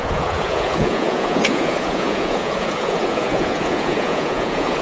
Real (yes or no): no